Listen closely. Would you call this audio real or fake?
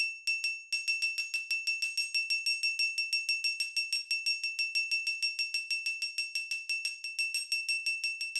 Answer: real